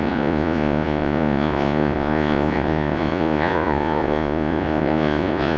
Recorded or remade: remade